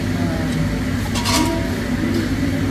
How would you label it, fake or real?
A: real